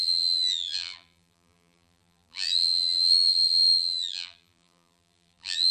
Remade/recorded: remade